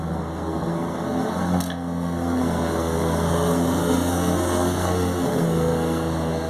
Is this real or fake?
fake